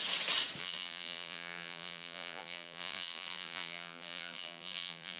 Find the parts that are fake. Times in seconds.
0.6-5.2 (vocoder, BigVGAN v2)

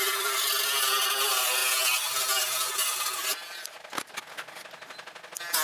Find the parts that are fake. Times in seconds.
none